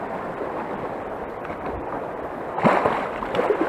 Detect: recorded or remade recorded